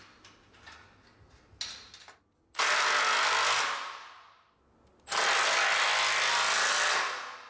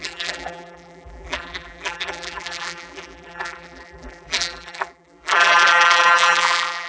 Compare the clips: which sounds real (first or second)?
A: first